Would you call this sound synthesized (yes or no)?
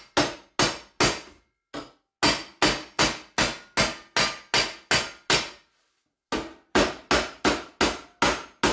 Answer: no